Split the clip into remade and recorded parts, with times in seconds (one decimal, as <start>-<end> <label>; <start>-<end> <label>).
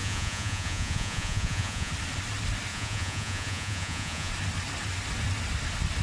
0.0-1.9 remade; 1.9-2.7 recorded; 2.7-4.3 remade; 4.3-6.0 recorded